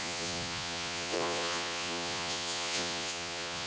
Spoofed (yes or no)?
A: yes